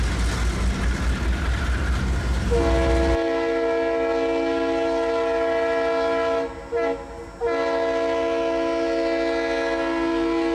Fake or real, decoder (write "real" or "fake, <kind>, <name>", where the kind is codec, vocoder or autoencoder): real